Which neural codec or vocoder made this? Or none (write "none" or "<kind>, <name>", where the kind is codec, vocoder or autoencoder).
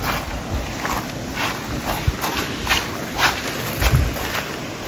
none